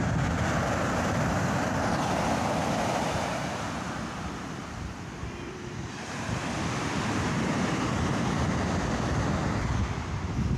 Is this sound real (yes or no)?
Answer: yes